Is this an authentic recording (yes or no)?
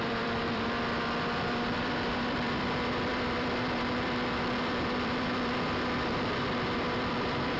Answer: no